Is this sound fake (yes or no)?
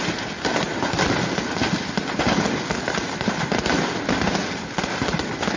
no